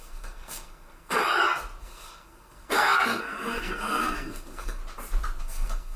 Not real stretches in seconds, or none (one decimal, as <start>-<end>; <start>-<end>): 0.0-1.2; 1.8-4.8; 5.4-6.0

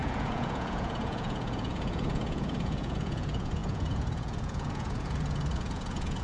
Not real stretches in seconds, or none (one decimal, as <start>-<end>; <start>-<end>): 0.0-6.2

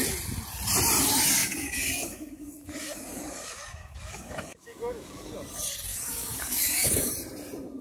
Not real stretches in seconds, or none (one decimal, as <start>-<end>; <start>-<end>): 1.4-5.3; 5.9-7.1

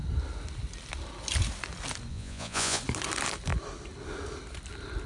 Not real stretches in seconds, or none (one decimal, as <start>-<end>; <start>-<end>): 2.1-2.8

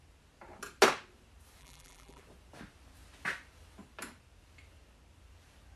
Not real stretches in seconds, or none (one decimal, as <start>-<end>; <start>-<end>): 1.6-2.2

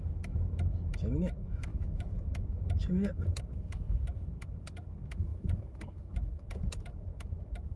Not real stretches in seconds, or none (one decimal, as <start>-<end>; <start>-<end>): 0.0-7.8

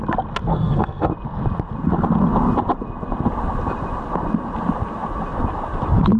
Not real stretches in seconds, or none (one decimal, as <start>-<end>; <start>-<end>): 0.5-1.1

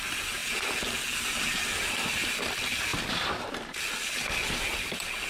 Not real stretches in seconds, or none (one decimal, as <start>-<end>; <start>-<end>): 0.0-0.4; 2.0-5.3